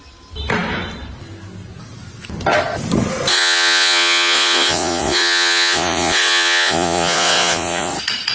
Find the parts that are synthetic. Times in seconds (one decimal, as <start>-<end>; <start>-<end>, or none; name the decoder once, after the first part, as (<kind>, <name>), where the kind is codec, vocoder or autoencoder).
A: 3.3-7.9 (vocoder, Vocos)